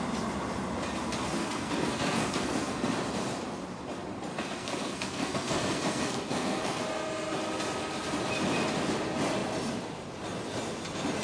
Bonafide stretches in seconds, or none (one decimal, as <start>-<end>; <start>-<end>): 0.0-1.4; 2.9-4.3; 6.8-11.2